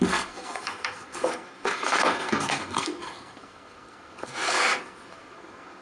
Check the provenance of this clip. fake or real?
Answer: fake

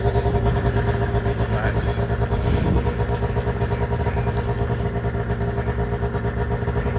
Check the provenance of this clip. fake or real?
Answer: real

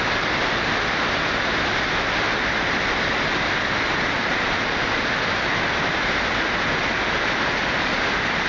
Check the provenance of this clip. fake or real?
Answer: real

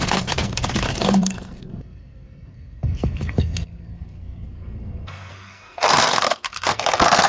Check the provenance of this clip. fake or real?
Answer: fake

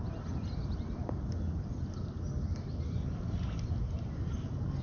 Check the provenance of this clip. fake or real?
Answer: real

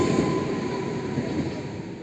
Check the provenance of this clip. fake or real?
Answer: real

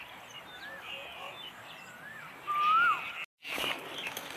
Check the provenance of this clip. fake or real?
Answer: real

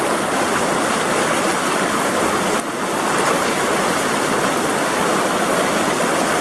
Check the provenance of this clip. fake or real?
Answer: real